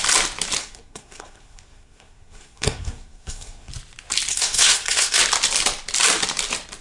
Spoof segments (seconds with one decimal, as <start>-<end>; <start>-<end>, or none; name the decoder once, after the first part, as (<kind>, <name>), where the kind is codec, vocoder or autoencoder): 0.6-3.7 (codec, SNAC); 4.3-5.2